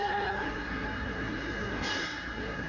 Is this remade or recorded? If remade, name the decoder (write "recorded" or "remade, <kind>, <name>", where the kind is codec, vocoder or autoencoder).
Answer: remade, codec, SNAC